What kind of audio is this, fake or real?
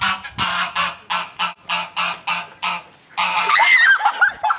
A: real